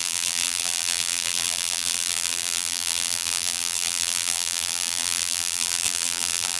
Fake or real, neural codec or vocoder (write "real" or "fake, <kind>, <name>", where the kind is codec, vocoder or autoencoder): fake, vocoder, BigVGAN v2